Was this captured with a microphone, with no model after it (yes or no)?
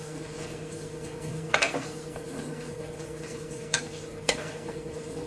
no